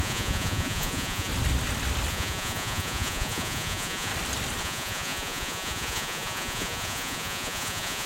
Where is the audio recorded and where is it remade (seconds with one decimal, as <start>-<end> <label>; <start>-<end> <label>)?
0.0-1.3 remade; 1.3-2.1 recorded; 2.1-4.1 remade; 4.1-4.6 recorded; 4.6-8.1 remade